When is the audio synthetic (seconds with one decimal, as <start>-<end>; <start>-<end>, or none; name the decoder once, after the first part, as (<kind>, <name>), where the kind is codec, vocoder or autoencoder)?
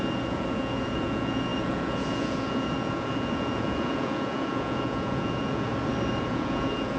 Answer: 0.0-5.7 (vocoder, Vocos); 6.3-7.0